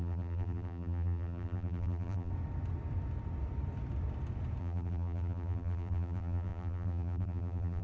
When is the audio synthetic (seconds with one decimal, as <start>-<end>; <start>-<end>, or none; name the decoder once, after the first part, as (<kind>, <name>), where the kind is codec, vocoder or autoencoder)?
0.0-2.3 (vocoder, BigVGAN v2); 4.6-7.8